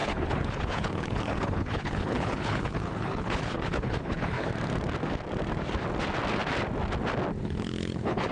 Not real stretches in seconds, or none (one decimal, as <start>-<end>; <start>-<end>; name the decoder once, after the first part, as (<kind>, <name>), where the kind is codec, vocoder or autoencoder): 0.0-4.5 (codec, HILCodec); 7.4-8.3